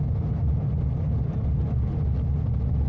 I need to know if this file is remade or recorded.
recorded